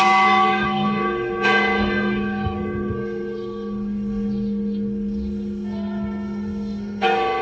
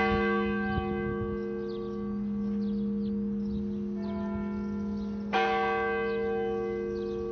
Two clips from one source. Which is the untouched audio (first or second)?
second